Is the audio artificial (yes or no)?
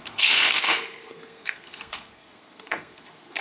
yes